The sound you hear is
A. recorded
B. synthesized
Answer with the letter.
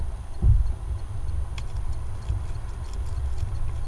A